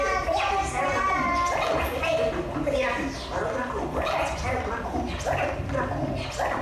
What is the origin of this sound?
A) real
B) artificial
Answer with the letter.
A